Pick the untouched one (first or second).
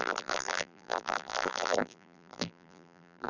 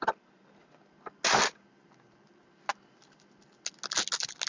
second